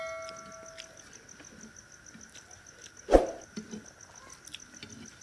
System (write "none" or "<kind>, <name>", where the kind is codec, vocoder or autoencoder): none